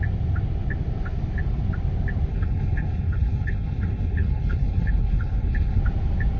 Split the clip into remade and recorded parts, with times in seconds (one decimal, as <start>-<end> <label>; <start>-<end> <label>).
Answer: 0.0-2.3 recorded; 2.3-5.8 remade; 5.8-6.4 recorded